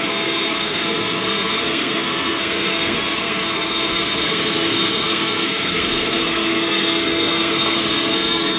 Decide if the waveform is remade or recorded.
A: remade